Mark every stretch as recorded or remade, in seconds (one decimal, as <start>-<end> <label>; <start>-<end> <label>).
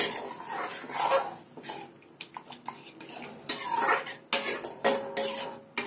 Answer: 0.0-5.9 recorded